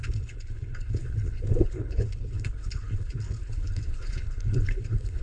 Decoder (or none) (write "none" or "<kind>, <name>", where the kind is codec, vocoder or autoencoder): codec, HILCodec